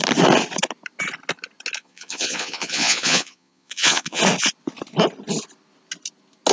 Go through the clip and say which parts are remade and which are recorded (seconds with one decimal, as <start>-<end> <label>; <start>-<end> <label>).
0.0-1.8 recorded; 1.8-4.2 remade; 4.2-6.5 recorded